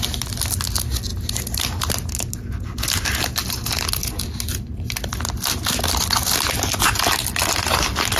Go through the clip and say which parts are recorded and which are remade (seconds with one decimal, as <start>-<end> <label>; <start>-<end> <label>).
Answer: 0.0-8.2 recorded